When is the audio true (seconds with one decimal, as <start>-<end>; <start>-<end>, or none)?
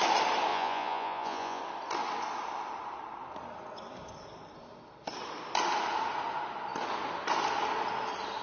0.0-0.5; 1.6-8.4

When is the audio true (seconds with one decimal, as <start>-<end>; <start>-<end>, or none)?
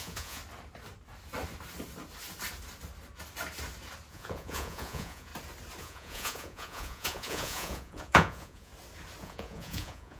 0.4-4.1; 5.3-5.8; 8.7-9.2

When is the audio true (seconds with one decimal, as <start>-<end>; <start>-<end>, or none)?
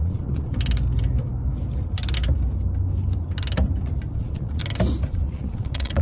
0.5-4.1; 4.6-5.1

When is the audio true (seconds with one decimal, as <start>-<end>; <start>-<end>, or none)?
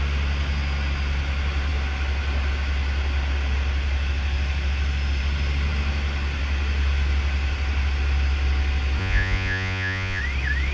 0.0-9.0; 10.2-10.7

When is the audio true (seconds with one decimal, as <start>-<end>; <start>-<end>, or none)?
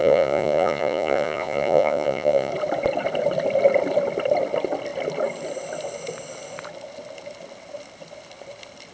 2.5-8.9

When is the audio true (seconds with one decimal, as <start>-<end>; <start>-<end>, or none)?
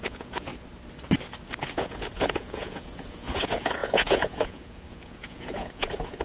0.5-1.6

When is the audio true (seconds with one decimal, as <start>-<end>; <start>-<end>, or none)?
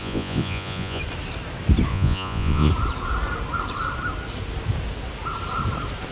1.0-1.9; 2.7-6.1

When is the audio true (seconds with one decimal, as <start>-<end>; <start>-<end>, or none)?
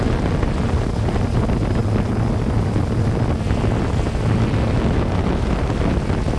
0.0-6.4